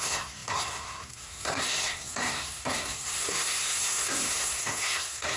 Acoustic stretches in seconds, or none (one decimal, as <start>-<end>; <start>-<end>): none